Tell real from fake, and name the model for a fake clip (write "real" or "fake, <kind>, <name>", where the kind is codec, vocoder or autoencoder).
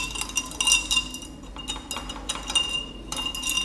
real